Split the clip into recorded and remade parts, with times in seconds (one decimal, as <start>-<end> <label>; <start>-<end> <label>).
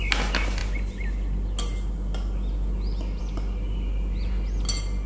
0.0-5.1 recorded